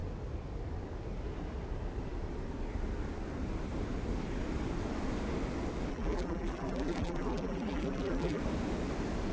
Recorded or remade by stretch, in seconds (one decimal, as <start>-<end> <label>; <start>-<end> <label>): 0.0-5.9 recorded; 5.9-8.4 remade; 8.4-9.3 recorded